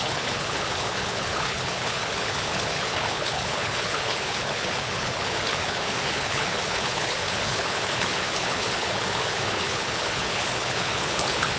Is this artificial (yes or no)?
yes